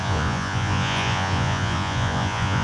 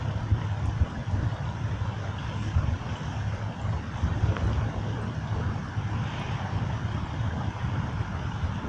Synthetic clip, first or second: first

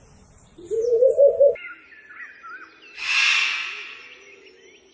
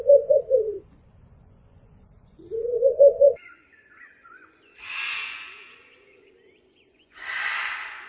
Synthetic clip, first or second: second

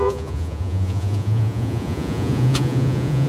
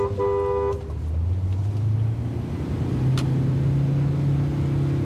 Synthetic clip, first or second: first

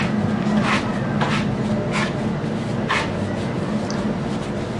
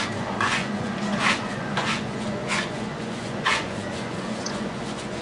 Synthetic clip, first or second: second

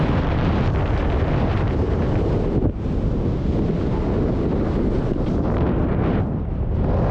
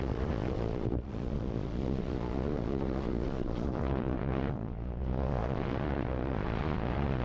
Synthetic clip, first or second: second